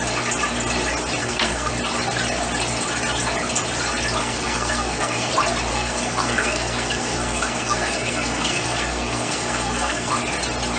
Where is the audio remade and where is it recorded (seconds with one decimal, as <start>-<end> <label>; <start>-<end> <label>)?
0.0-1.2 recorded; 1.2-1.7 remade; 1.7-4.2 recorded; 4.2-5.3 remade; 5.3-5.7 recorded; 5.7-10.1 remade; 10.1-10.8 recorded